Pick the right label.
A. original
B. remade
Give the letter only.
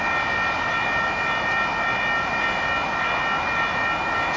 A